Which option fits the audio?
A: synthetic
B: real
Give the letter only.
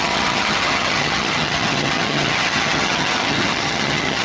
A